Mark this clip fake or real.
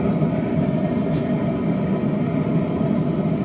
real